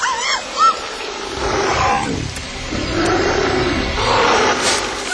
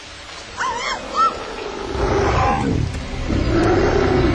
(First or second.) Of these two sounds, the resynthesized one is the first